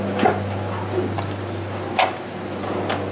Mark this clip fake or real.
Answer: real